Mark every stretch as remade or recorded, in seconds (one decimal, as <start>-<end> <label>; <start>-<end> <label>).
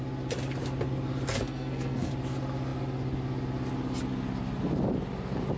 0.0-1.3 recorded; 1.3-2.1 remade; 2.1-5.6 recorded